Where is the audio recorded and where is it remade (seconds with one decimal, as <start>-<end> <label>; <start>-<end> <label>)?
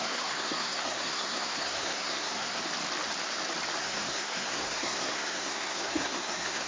0.0-2.6 remade; 2.6-3.8 recorded; 3.8-6.7 remade